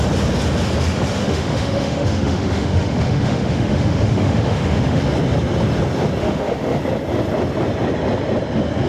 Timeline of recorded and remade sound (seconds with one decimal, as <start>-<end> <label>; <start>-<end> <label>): 0.0-1.2 recorded; 1.2-5.0 remade; 5.0-6.2 recorded; 6.2-6.8 remade; 6.8-8.9 recorded